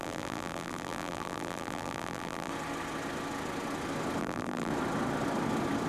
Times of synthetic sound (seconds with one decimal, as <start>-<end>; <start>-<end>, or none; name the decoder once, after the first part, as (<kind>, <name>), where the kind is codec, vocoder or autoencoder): 0.0-2.5 (vocoder, BigVGAN v2); 4.2-4.7